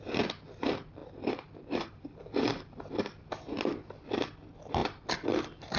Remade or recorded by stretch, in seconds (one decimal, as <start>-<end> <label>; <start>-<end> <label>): 0.0-1.0 recorded; 1.0-2.9 remade; 2.9-5.8 recorded